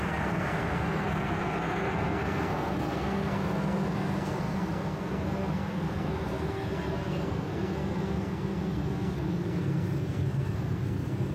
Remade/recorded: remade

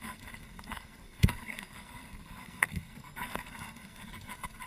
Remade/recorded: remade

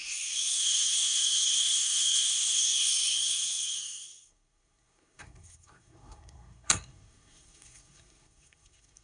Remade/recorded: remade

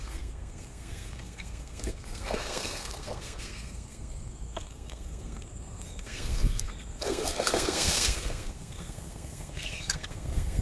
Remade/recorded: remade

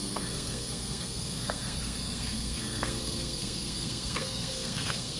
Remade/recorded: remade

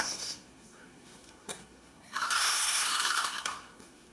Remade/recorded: remade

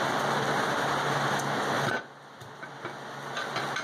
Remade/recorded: recorded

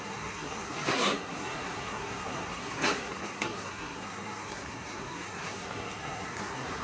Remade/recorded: remade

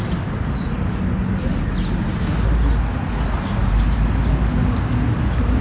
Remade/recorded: recorded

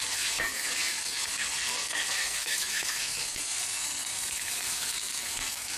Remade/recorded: remade